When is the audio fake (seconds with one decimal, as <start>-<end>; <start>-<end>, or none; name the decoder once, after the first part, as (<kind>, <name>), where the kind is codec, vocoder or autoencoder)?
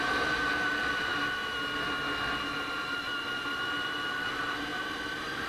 4.7-5.5 (vocoder, BigVGAN v2)